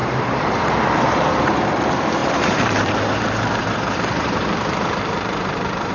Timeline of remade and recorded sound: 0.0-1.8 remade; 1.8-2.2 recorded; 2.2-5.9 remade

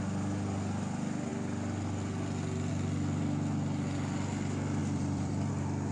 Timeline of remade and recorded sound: 0.0-4.8 recorded; 4.8-5.5 remade; 5.5-5.9 recorded

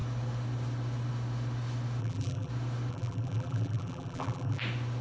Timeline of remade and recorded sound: 0.0-2.0 recorded; 2.0-2.5 remade; 2.5-2.9 recorded; 2.9-4.6 remade; 4.6-5.0 recorded